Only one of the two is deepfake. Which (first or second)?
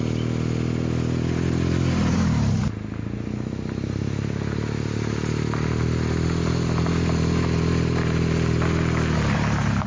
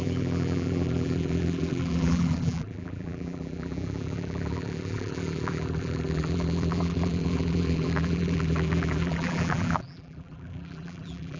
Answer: second